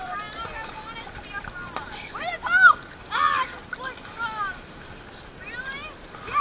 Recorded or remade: recorded